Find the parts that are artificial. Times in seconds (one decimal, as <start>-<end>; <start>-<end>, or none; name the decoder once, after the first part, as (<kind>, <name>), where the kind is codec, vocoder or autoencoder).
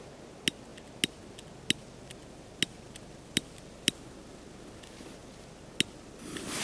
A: none